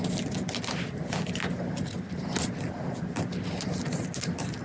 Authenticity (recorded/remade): recorded